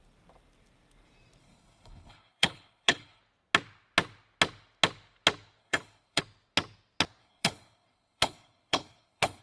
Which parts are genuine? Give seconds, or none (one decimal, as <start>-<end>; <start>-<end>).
0.0-1.4; 3.2-5.6; 6.2-7.2